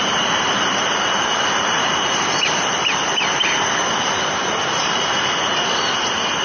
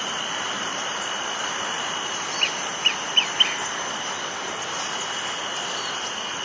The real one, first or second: second